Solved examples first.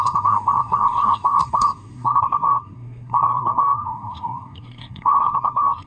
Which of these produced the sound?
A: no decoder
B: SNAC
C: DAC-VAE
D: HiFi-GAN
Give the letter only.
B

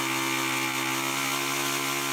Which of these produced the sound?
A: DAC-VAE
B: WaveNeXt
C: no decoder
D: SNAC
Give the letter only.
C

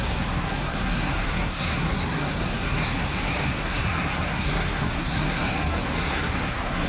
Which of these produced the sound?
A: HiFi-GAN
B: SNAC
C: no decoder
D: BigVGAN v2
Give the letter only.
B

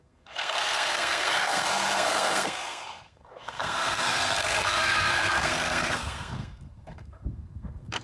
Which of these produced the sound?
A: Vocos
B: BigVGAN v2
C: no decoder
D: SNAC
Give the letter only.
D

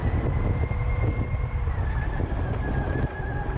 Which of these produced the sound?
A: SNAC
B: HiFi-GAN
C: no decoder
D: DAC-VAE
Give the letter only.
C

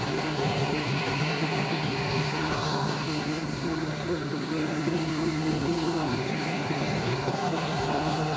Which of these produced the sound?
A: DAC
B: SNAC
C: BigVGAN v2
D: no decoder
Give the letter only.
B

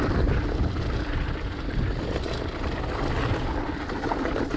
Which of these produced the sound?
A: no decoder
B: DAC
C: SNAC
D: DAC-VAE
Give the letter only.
A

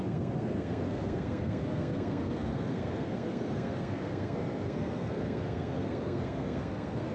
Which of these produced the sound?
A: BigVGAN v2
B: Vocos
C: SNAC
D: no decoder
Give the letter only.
C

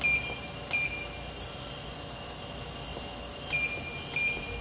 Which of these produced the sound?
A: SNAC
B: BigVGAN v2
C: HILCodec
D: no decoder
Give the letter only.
D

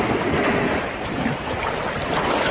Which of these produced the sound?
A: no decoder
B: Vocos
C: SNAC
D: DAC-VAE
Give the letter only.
A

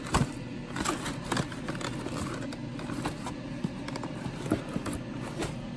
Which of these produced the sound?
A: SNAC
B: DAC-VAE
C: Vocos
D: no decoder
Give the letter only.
D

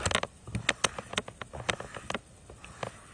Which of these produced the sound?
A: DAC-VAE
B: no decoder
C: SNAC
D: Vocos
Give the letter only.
B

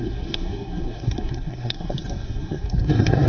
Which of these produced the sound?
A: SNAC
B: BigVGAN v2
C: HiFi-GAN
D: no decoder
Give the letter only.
A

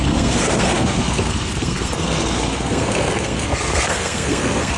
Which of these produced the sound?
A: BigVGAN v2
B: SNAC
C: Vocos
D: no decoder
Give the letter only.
B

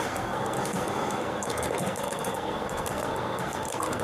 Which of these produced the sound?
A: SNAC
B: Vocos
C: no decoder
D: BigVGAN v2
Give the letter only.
A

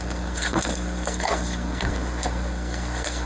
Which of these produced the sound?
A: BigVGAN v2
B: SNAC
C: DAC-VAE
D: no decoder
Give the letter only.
B